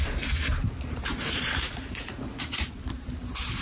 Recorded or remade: remade